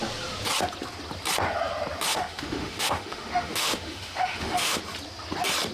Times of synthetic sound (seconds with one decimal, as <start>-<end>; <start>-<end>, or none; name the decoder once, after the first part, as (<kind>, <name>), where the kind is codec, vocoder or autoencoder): 2.1-4.8 (autoencoder, DAC-VAE)